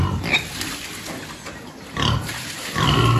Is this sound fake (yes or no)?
yes